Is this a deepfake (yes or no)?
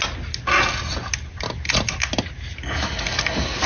no